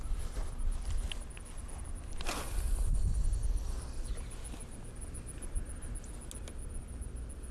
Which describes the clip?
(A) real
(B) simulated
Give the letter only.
A